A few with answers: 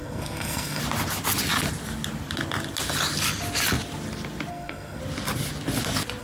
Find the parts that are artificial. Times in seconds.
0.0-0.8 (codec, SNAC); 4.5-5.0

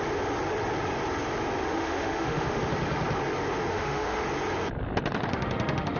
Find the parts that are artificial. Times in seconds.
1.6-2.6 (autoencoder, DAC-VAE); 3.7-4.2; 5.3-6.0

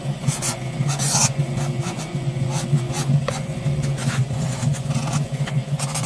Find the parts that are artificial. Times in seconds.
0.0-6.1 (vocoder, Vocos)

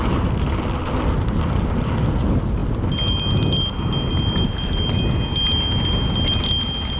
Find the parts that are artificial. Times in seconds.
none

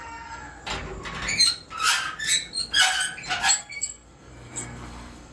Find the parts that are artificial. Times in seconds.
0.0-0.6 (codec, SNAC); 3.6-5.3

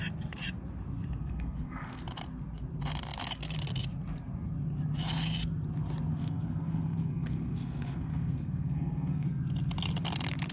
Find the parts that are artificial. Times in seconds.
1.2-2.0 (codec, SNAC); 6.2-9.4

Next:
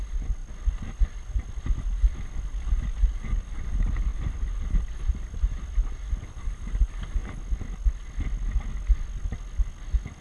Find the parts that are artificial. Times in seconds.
0.0-7.2 (vocoder, BigVGAN v2)

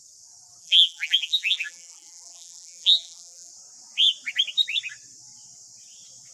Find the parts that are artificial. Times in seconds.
0.6-3.5 (vocoder, BigVGAN v2)